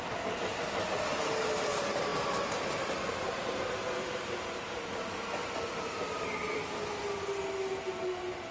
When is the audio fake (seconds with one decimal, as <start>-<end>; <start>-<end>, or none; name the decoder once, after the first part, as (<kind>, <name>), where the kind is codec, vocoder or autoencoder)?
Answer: none